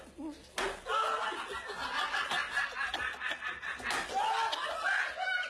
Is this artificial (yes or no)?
no